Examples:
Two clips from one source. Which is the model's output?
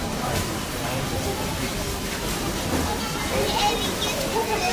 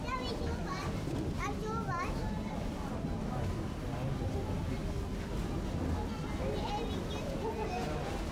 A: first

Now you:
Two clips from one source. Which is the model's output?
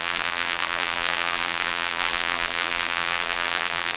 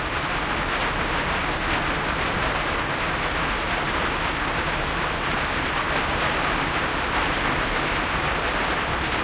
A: first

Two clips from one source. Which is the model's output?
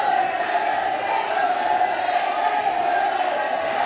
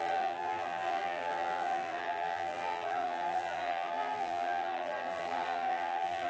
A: second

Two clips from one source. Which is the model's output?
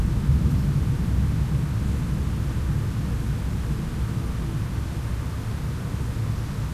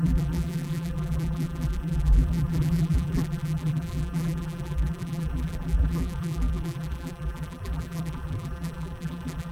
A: second